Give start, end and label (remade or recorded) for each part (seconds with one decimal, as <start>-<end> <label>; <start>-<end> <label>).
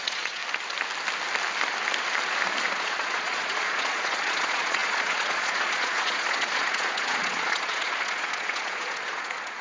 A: 0.0-0.4 remade; 0.4-2.6 recorded; 2.6-9.6 remade